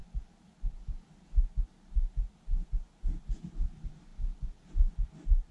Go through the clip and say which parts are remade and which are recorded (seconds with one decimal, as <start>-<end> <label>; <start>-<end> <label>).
0.0-5.5 recorded